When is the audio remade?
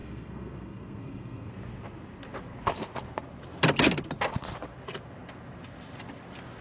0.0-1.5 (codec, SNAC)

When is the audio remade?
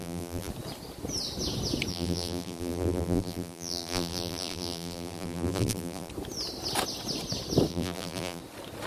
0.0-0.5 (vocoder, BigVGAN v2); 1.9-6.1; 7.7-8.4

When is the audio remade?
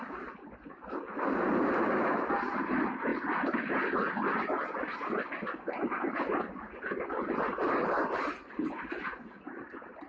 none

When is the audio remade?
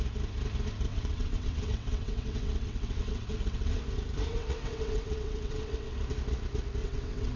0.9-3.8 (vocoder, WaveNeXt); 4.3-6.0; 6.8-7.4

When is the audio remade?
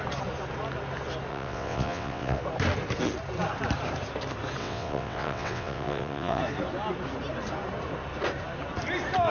1.3-2.4 (vocoder, WaveNeXt); 4.6-6.4